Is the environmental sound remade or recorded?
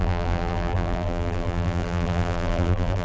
remade